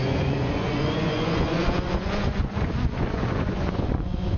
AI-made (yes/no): yes